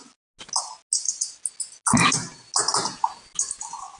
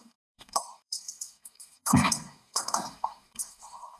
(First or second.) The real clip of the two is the first